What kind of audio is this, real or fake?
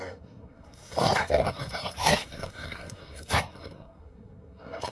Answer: fake